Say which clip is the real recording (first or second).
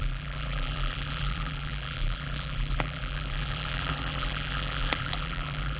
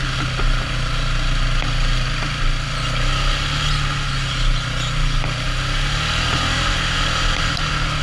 second